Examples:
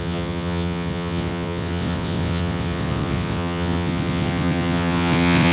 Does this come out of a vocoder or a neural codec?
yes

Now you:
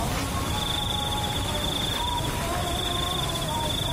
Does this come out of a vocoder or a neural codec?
yes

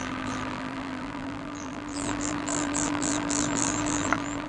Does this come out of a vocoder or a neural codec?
yes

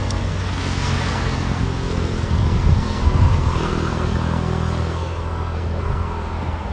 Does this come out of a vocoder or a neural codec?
yes